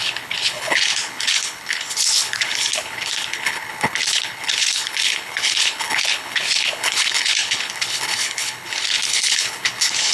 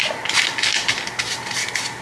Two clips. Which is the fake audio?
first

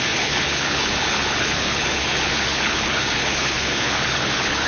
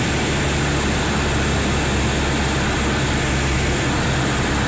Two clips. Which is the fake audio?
first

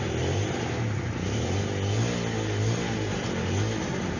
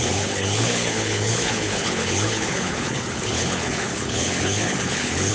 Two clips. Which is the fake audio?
second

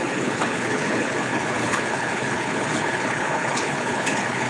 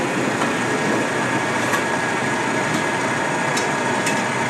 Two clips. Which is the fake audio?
first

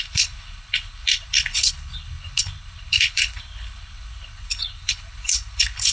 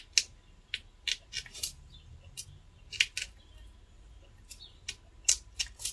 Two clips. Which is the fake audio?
first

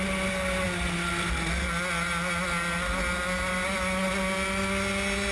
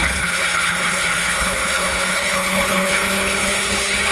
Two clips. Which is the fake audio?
second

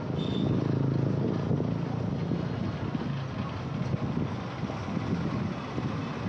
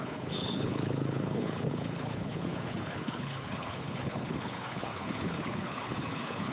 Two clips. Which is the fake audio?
second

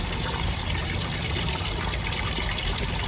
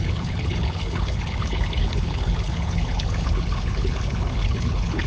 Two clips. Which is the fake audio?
second